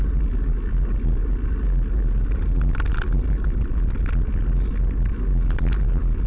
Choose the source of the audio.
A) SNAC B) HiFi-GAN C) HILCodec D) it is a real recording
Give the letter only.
D